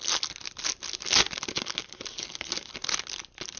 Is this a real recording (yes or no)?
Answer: yes